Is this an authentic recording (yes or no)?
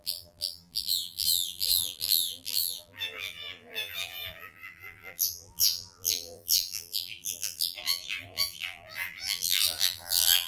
no